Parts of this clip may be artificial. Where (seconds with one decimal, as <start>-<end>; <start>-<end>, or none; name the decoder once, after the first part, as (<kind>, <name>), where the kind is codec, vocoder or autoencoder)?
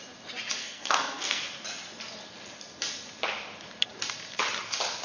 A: 0.6-1.4 (codec, SNAC)